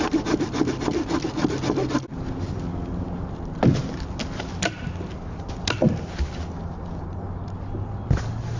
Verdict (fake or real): real